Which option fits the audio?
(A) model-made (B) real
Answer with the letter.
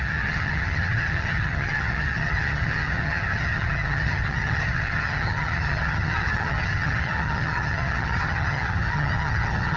A